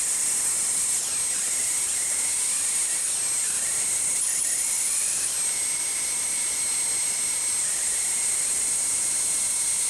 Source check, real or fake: real